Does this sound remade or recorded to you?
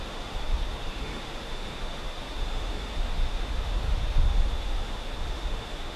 remade